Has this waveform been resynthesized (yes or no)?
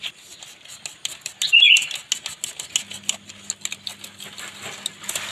no